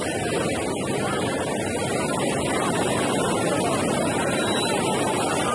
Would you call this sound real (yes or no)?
yes